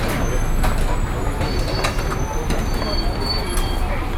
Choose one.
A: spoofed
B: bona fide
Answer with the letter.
B